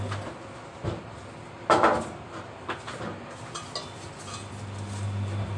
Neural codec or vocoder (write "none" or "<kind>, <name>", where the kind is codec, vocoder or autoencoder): none